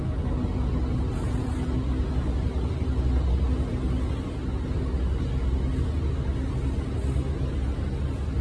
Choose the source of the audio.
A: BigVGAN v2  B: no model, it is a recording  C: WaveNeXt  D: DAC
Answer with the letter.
B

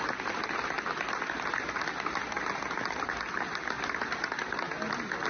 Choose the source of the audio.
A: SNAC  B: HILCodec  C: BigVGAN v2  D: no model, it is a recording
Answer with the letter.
D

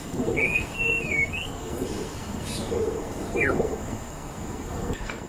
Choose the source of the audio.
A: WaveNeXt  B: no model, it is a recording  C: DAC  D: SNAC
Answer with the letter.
D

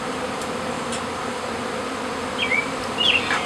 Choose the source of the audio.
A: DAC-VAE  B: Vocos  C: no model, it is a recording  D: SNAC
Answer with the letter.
C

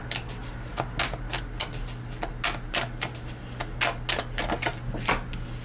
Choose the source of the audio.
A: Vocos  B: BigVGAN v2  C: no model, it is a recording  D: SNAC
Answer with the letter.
C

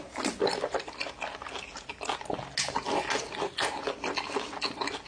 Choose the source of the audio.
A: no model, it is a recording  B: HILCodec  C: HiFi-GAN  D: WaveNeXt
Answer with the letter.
A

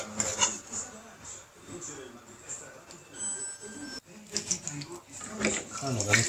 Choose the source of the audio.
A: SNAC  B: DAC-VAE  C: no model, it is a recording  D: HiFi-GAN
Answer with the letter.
C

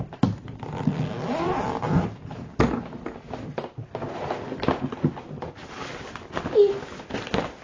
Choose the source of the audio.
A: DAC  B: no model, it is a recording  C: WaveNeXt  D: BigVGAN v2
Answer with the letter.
B